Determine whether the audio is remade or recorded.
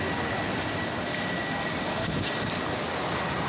recorded